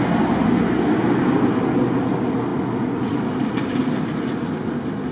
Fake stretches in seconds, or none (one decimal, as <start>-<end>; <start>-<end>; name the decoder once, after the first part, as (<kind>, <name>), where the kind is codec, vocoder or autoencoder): none

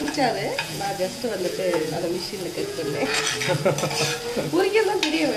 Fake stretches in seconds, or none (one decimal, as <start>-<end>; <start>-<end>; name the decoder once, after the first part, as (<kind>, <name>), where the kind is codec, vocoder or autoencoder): 0.0-3.2 (vocoder, Vocos)

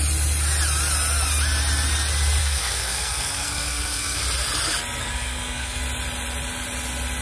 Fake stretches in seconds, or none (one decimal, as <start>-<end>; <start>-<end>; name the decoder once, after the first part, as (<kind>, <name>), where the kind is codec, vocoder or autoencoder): 2.4-4.2 (codec, SNAC); 5.0-5.8

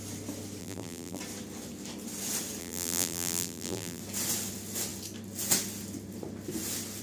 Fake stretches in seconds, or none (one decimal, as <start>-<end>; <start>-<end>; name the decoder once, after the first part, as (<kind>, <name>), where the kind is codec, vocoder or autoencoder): 0.6-1.2 (vocoder, BigVGAN v2); 2.6-4.0

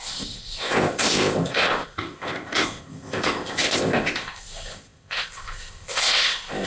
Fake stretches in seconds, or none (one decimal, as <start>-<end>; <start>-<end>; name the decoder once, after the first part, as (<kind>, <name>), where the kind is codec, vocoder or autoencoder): 0.0-6.7 (codec, ZipCodec)

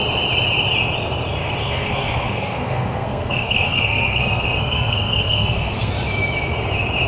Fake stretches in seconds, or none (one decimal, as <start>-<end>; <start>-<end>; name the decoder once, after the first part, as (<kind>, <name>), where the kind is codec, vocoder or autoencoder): 1.6-5.9 (codec, SNAC)

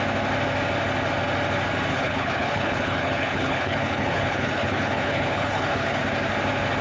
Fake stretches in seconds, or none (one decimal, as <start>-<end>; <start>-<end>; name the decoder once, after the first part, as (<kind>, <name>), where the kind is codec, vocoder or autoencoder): 1.9-6.0 (codec, HILCodec)